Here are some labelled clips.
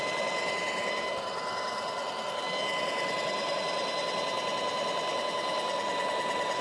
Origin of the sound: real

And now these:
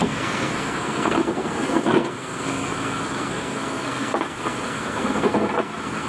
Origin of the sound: fake